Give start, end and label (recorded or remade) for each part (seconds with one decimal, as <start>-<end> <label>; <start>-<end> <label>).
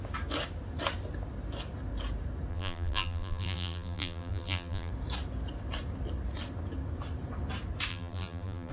0.0-2.5 recorded; 2.5-4.9 remade; 4.9-7.9 recorded; 7.9-8.7 remade